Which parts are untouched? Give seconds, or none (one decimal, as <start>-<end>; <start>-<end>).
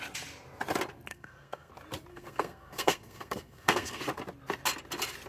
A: 0.0-1.1; 1.7-2.1; 4.0-5.3